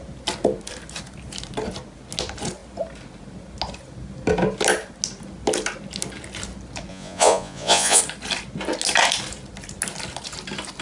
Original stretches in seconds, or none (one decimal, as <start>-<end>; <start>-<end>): 0.0-6.9; 8.0-10.8